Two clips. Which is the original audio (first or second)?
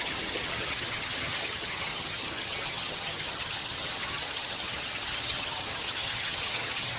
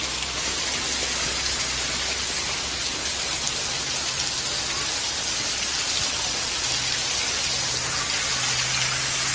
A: second